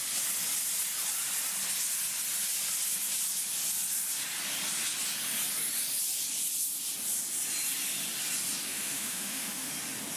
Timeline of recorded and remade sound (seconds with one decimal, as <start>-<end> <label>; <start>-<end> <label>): 0.0-8.7 recorded; 8.7-9.7 remade; 9.7-10.2 recorded